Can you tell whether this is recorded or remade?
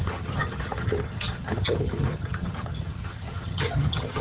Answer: remade